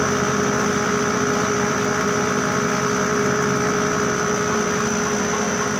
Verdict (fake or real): real